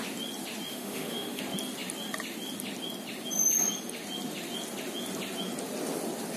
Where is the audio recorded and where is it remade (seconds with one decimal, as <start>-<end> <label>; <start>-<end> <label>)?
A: 0.0-0.7 recorded; 0.7-1.4 remade; 1.4-6.4 recorded